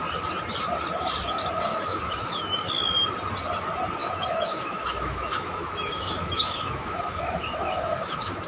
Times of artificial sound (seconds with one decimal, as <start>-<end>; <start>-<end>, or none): 1.7-2.7; 4.0-8.5